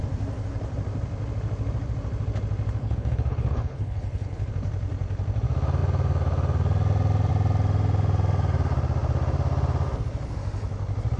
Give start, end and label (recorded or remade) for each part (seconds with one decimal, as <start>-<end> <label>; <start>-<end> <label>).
0.0-2.8 recorded; 2.8-4.5 remade; 4.5-11.2 recorded